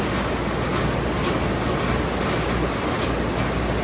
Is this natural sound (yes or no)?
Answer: yes